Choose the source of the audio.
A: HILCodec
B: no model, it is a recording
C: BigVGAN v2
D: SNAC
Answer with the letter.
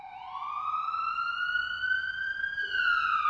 B